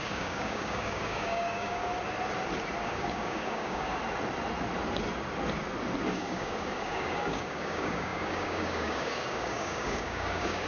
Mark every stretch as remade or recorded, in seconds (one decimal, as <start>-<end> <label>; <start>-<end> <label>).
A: 0.0-1.8 remade; 1.8-2.8 recorded; 2.8-4.0 remade; 4.0-6.1 recorded; 6.1-10.7 remade